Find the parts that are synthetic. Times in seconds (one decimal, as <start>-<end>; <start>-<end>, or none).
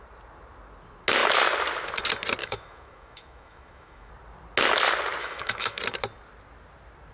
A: 2.4-4.1; 5.2-5.8